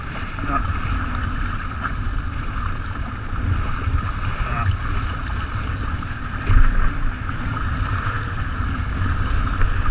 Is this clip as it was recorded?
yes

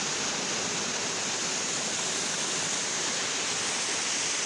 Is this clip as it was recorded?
yes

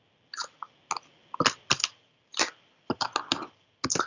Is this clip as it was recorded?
yes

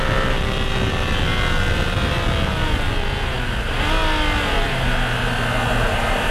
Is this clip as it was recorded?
yes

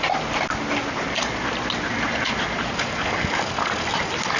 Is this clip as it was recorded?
yes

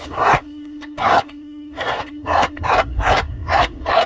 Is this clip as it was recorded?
no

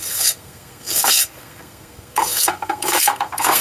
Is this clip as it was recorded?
no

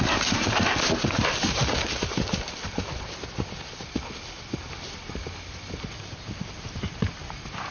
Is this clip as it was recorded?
yes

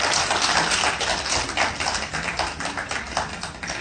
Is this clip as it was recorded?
yes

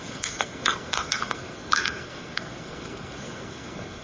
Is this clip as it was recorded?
no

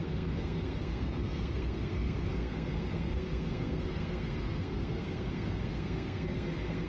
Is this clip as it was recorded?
no